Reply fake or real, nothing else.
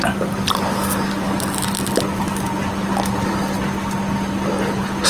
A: real